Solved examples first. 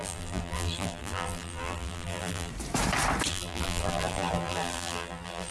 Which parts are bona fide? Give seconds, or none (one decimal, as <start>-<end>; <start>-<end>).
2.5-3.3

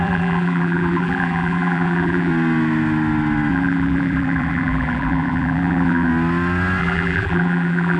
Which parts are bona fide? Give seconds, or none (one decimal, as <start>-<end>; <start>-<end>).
2.3-3.5; 6.1-6.8

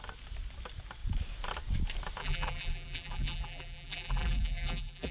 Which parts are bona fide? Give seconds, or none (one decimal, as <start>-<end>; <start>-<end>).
0.0-2.2

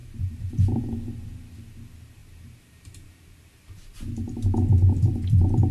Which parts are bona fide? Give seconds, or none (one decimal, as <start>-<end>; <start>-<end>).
0.8-2.2; 5.0-5.7

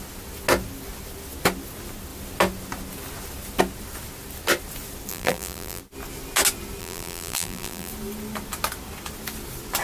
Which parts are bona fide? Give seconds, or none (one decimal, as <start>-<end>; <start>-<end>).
0.0-5.1; 5.8-6.8; 7.9-9.8